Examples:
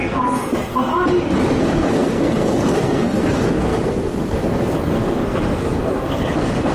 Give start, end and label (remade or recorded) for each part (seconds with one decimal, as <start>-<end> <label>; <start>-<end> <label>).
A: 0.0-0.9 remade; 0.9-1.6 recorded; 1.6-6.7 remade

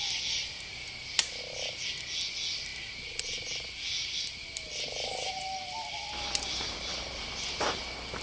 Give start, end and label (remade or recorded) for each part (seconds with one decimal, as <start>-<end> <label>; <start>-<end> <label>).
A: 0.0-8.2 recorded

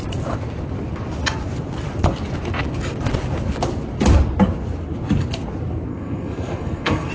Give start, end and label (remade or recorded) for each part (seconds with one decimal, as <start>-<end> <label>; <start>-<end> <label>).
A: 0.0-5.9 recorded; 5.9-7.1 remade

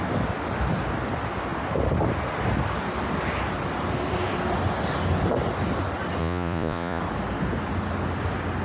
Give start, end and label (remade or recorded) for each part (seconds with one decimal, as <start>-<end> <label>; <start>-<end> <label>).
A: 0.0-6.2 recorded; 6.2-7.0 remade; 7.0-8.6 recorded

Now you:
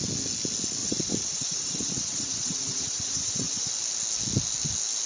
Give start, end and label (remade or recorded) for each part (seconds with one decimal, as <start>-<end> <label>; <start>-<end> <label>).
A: 0.0-0.8 recorded; 0.8-3.7 remade; 3.7-5.1 recorded